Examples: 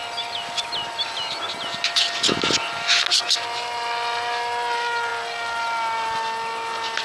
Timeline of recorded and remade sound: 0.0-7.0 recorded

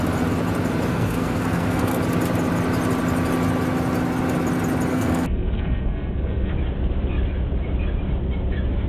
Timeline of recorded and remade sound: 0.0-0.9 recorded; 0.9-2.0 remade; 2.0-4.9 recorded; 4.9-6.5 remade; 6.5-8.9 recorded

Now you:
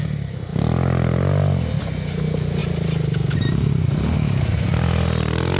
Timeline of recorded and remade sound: 0.0-5.6 recorded

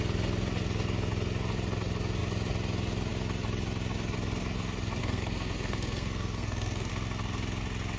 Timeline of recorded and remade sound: 0.0-5.0 recorded; 5.0-6.9 remade; 6.9-8.0 recorded

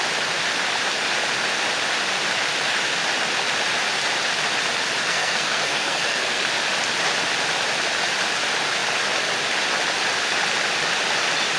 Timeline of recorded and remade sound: 0.0-5.1 recorded; 5.1-6.4 remade; 6.4-11.6 recorded